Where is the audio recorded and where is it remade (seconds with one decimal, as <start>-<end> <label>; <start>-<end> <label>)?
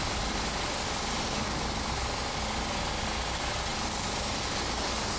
0.0-3.7 recorded; 3.7-4.4 remade; 4.4-5.2 recorded